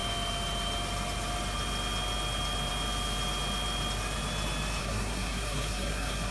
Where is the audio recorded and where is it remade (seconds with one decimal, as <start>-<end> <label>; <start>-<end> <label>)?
0.0-4.8 recorded; 4.8-6.3 remade